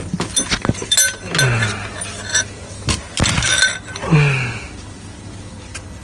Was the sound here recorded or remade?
recorded